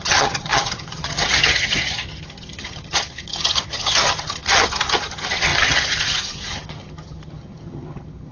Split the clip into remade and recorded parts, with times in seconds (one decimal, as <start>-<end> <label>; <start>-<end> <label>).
0.0-8.3 remade